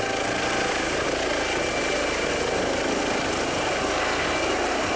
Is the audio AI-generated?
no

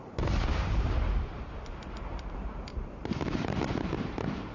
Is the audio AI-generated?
yes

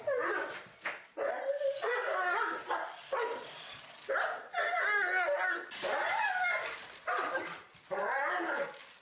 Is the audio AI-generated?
no